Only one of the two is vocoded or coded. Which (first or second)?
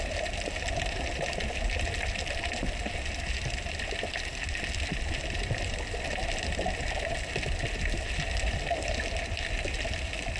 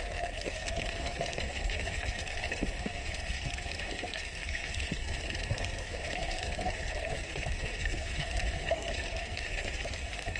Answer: second